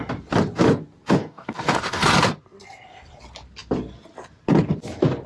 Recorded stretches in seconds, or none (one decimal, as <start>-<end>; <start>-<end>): 0.0-1.2; 2.1-5.3